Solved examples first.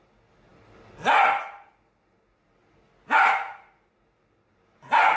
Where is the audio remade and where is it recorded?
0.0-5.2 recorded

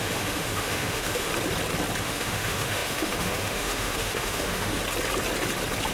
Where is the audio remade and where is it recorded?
0.0-1.3 remade; 1.3-2.0 recorded; 2.0-4.8 remade; 4.8-5.9 recorded

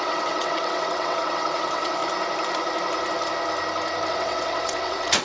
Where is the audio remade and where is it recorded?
0.0-2.0 remade; 2.0-4.1 recorded; 4.1-5.2 remade

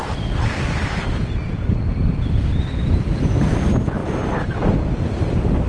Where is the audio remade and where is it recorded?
0.0-5.7 recorded